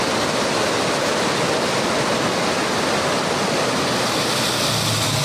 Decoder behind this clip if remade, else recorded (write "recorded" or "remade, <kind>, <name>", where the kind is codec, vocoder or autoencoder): recorded